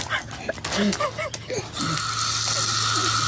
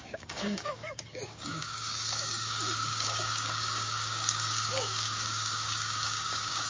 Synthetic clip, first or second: second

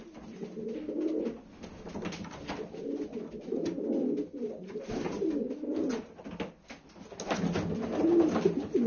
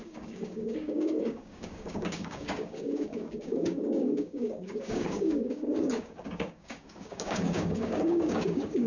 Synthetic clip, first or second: second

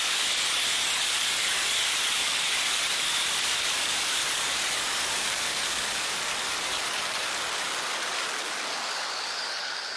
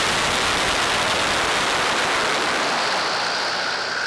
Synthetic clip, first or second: first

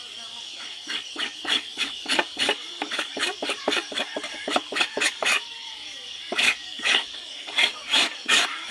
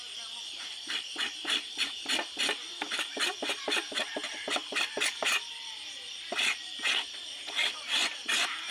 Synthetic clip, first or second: first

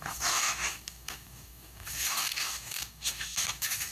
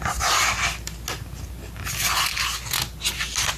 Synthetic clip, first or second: first